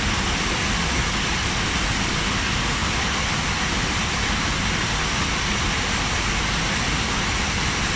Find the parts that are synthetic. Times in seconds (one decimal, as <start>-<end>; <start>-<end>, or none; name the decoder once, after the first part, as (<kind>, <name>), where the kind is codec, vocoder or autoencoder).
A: none